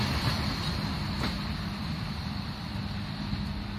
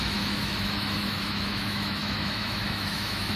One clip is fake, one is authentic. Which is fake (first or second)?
second